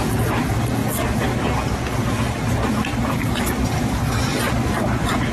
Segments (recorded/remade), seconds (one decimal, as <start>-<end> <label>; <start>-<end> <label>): 0.0-5.3 recorded